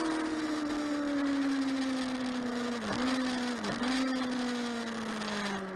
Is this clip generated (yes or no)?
no